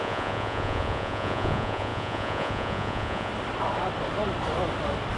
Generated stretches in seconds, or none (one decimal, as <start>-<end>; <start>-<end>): 0.0-3.3